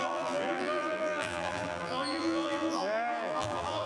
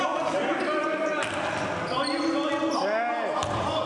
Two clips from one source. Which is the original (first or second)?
second